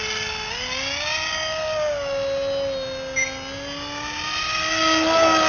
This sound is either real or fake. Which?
real